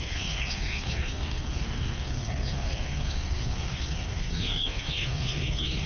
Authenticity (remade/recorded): remade